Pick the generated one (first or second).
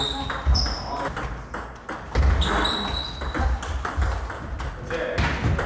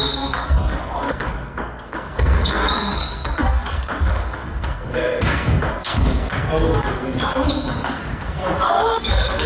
second